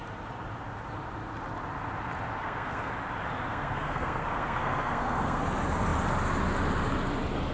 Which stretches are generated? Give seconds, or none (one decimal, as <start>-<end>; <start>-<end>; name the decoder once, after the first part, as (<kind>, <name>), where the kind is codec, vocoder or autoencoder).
2.4-2.9 (codec, SNAC); 3.5-5.4